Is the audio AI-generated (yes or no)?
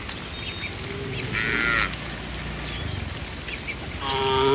no